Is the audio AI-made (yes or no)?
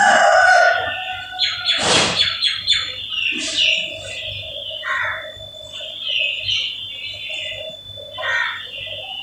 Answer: no